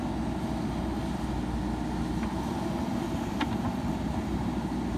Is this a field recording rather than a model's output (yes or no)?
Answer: yes